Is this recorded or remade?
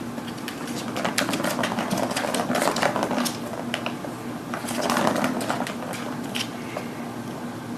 recorded